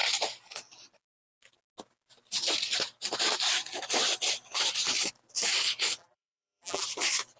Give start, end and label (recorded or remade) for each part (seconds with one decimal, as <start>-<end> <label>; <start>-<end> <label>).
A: 0.0-6.0 recorded; 6.0-6.8 remade; 6.8-7.4 recorded